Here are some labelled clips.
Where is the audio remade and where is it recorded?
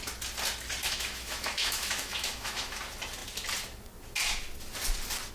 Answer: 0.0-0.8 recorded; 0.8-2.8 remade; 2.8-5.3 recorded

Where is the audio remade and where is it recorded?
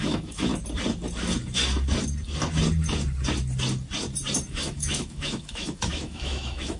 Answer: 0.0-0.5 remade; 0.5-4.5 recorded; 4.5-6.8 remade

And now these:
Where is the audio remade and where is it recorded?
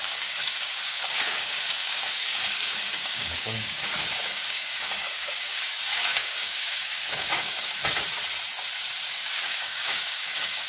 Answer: 0.0-7.8 remade; 7.8-9.1 recorded; 9.1-10.7 remade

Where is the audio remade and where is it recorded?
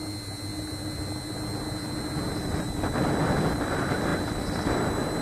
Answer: 0.0-5.2 recorded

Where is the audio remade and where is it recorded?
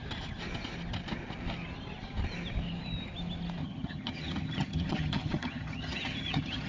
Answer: 0.0-3.6 recorded; 3.6-6.7 remade